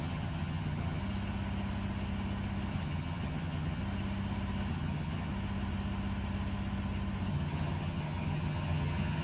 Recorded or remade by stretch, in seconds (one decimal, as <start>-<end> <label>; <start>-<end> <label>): 0.0-1.0 remade; 1.0-2.7 recorded; 2.7-3.8 remade; 3.8-4.7 recorded; 4.7-5.3 remade; 5.3-7.3 recorded; 7.3-9.2 remade